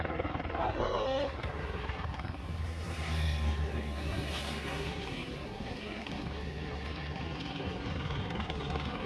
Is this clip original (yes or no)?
no